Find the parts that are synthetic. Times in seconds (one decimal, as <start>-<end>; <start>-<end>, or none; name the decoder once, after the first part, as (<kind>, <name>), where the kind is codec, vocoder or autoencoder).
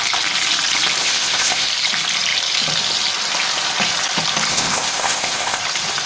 1.0-1.7 (codec, ZipCodec); 4.5-5.6